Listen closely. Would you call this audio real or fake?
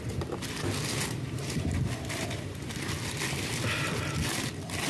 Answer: real